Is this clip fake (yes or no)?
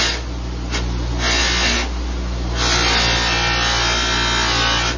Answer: no